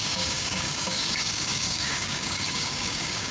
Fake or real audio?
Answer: fake